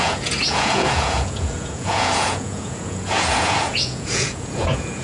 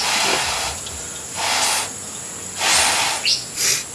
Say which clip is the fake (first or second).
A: first